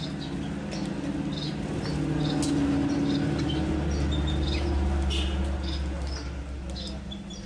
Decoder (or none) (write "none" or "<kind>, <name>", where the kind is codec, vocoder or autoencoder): none